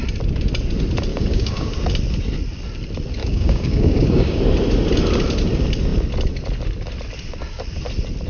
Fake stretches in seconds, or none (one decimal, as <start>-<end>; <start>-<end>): 1.1-1.7; 3.2-4.4